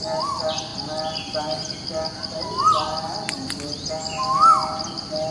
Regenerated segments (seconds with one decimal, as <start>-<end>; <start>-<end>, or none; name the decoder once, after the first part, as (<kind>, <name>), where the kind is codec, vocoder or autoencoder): none